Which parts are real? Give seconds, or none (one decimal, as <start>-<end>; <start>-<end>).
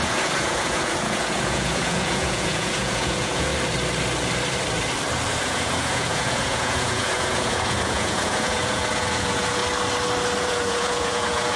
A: 3.5-5.4; 9.6-10.4